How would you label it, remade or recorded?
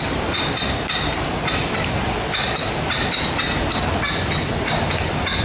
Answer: recorded